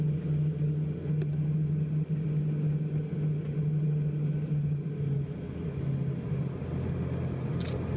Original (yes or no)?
yes